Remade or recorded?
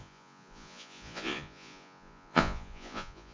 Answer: remade